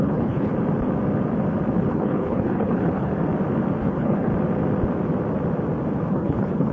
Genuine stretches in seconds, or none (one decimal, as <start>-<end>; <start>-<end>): 0.5-1.9; 3.1-3.8; 4.3-6.1